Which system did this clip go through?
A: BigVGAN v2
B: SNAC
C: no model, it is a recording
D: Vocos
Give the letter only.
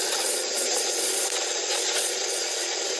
D